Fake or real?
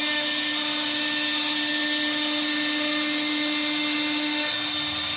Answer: real